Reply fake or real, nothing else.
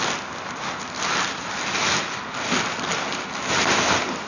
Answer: real